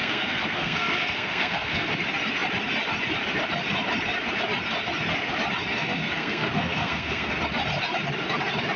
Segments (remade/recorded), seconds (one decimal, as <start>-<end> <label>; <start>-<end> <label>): 0.0-1.9 remade; 1.9-5.7 recorded; 5.7-7.4 remade; 7.4-8.8 recorded